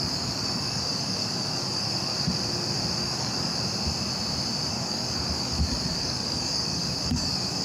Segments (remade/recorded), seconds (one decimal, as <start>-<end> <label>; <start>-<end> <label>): 0.0-2.1 remade; 2.1-3.0 recorded; 3.0-3.5 remade; 3.5-4.7 recorded; 4.7-7.6 remade